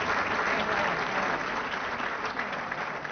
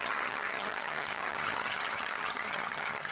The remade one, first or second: second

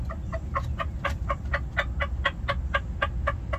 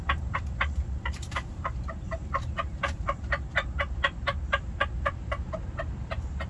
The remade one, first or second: second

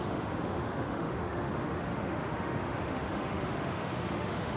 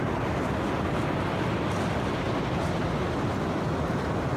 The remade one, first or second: first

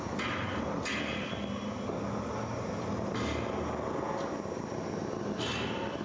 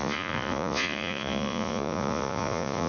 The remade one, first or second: second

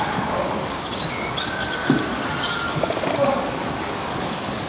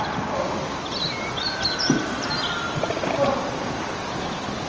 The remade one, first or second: first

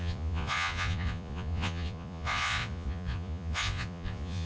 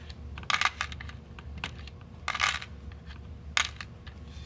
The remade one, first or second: first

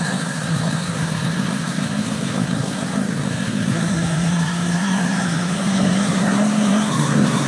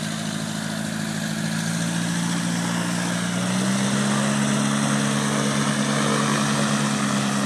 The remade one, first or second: first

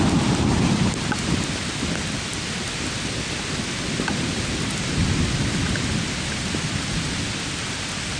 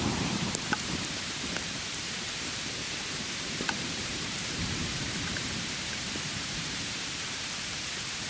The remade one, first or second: second